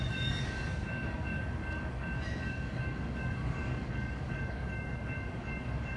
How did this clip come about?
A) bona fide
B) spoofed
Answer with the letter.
B